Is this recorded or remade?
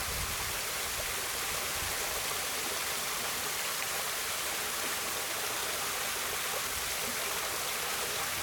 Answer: recorded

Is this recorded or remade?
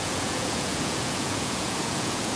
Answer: remade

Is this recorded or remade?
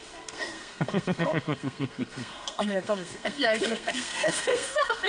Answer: remade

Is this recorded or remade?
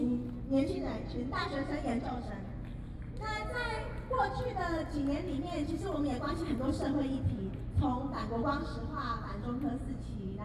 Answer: recorded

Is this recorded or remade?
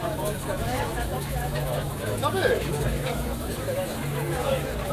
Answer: remade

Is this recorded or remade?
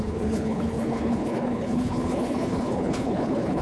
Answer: remade